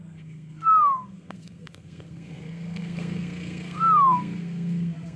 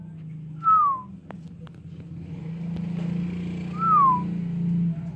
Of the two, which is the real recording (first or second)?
second